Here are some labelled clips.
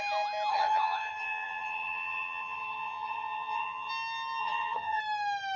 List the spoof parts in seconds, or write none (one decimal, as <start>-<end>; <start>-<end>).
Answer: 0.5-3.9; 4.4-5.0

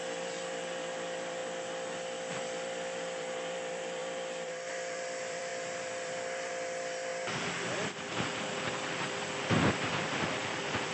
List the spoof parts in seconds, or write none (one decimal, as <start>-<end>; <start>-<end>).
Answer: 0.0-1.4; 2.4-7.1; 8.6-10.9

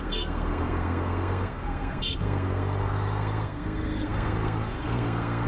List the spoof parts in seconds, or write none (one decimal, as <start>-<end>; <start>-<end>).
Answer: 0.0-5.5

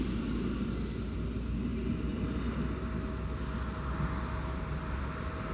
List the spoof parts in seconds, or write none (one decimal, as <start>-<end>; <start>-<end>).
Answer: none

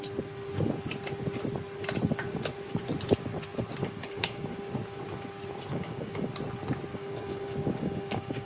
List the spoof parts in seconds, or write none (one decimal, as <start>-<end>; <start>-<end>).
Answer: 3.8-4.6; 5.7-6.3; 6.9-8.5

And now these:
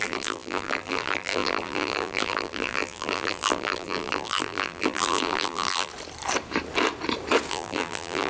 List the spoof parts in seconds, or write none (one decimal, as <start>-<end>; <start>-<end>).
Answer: 0.0-5.9; 7.5-8.3

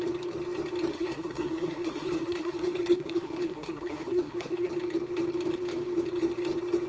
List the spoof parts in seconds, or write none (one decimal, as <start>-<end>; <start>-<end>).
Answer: 0.9-4.7